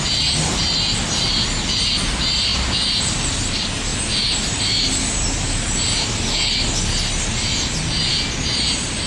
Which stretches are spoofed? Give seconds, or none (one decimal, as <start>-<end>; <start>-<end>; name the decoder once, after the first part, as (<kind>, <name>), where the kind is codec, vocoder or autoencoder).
none

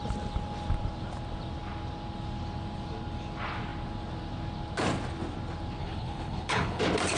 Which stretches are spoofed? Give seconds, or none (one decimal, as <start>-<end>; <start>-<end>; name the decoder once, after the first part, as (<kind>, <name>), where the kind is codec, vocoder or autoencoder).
5.8-6.8 (codec, HILCodec)

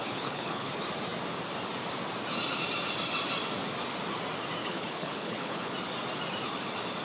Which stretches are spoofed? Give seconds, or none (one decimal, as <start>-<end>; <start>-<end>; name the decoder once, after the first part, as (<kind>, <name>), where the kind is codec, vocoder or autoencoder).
0.0-0.7 (codec, HILCodec); 4.6-5.7

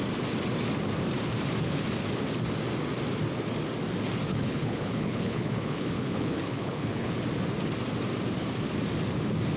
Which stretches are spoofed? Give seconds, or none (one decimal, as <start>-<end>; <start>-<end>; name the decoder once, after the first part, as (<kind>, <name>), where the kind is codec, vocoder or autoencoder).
4.3-7.1 (codec, HILCodec)

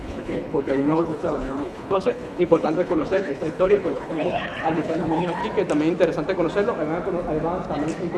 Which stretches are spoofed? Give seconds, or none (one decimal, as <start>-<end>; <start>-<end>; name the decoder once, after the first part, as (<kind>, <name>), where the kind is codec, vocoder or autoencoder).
0.0-5.4 (codec, HILCodec)

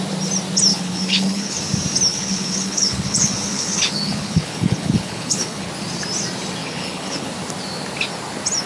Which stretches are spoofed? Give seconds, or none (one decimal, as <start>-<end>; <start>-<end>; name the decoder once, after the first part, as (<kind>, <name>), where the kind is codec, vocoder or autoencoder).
0.7-1.6 (codec, HILCodec); 2.1-5.7; 6.6-7.3

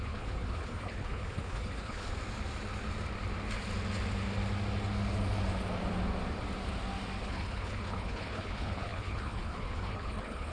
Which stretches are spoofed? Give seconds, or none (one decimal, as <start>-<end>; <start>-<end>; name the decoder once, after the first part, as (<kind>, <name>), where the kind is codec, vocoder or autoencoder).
0.0-2.1 (codec, HILCodec); 7.2-10.5